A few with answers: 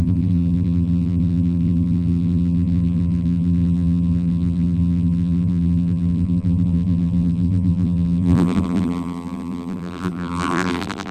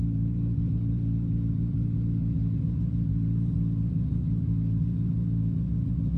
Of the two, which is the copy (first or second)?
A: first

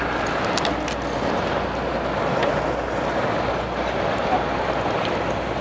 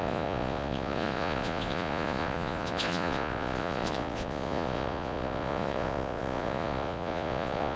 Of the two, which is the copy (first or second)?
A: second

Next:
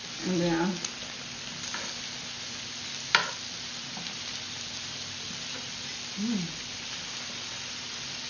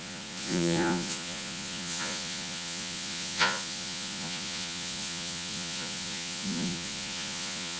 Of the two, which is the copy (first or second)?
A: second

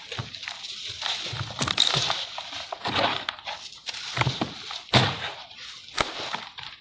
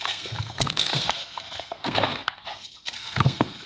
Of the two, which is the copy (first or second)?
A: second